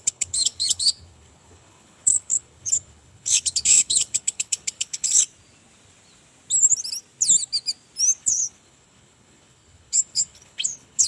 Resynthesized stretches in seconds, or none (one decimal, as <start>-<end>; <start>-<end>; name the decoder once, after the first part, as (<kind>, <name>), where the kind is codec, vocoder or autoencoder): 0.0-5.2 (codec, HILCodec); 8.2-11.1